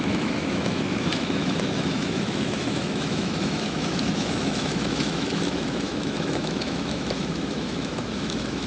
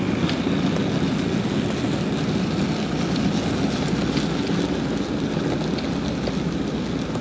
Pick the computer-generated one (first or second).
first